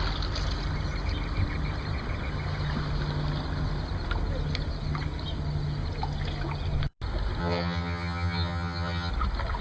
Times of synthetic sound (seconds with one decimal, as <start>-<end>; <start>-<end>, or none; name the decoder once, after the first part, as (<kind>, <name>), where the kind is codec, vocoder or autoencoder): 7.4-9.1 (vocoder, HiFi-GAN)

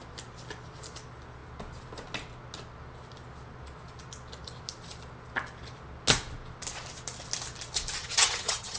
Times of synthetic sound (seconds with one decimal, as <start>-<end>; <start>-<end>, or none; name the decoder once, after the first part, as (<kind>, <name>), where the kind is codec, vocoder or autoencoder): 8.0-8.8 (vocoder, HiFi-GAN)

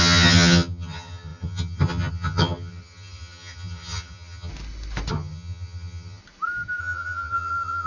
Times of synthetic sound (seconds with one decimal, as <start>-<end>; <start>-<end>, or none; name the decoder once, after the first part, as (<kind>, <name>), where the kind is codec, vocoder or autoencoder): 0.0-4.5 (vocoder, HiFi-GAN); 5.1-6.2; 6.8-7.9

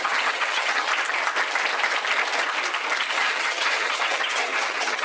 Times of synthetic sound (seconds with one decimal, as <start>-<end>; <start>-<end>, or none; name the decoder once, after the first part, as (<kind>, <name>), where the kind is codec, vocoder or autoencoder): 0.0-0.9 (vocoder, HiFi-GAN); 3.1-5.0